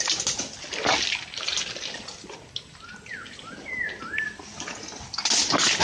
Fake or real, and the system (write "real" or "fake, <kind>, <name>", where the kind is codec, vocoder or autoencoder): real